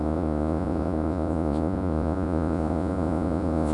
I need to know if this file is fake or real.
fake